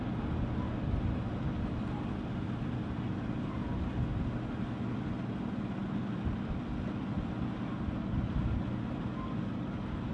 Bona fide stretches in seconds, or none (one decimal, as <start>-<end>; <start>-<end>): 0.0-10.1